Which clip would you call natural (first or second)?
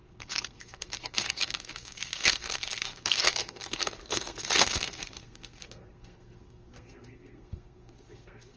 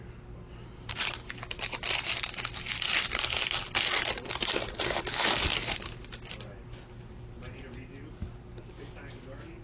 second